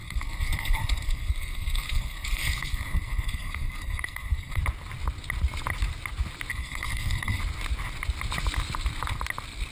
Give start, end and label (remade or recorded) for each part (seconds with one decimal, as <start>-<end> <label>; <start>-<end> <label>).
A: 0.0-4.6 remade; 4.6-6.5 recorded; 6.5-7.4 remade; 7.4-9.7 recorded